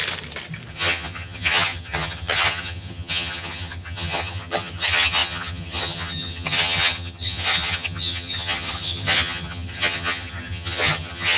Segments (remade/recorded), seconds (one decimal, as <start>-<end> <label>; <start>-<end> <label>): 0.0-0.7 recorded; 0.7-11.4 remade

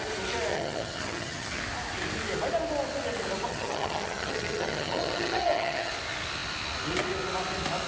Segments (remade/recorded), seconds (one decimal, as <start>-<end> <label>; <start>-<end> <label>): 0.0-0.5 recorded; 0.5-1.6 remade; 1.6-3.5 recorded; 3.5-5.9 remade; 5.9-7.9 recorded

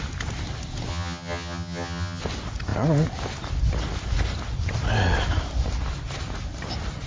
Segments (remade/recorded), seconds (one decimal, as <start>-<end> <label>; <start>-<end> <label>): 0.0-0.9 recorded; 0.9-2.2 remade; 2.2-7.1 recorded

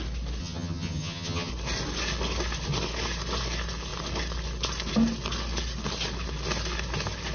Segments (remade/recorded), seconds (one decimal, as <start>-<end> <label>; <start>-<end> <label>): 0.0-0.4 recorded; 0.4-1.5 remade; 1.5-7.3 recorded

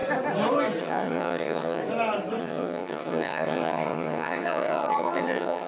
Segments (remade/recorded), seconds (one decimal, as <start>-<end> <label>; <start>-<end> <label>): 0.0-0.8 recorded; 0.8-1.8 remade; 1.8-2.4 recorded; 2.4-5.7 remade

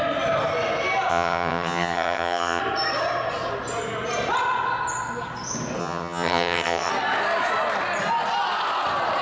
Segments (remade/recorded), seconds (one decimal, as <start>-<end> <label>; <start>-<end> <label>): 0.0-1.1 recorded; 1.1-2.6 remade; 2.6-5.8 recorded; 5.8-6.9 remade; 6.9-9.2 recorded